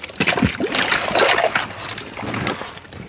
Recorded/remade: recorded